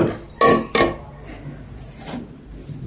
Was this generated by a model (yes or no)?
no